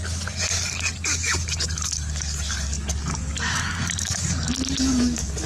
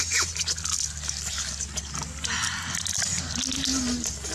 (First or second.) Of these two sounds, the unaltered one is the second